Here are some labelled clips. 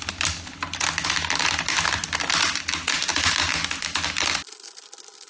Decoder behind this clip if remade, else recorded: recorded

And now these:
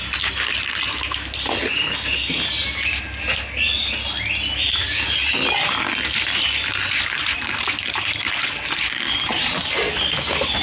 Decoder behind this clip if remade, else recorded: recorded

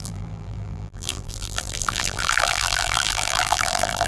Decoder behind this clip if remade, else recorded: remade, vocoder, BigVGAN v2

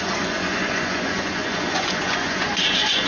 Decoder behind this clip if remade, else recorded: remade, vocoder, Vocos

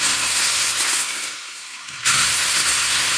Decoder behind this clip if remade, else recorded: remade, codec, SNAC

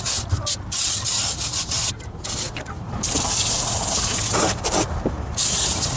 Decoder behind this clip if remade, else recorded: recorded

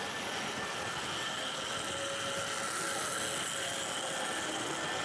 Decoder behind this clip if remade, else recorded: recorded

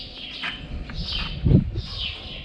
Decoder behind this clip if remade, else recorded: recorded